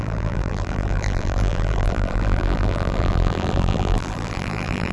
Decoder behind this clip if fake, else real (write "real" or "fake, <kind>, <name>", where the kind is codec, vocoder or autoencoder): fake, vocoder, BigVGAN v2